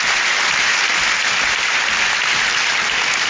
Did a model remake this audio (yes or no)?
no